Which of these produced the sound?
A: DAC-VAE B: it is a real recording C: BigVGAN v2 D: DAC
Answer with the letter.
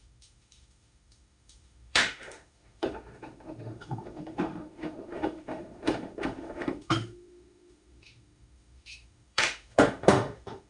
A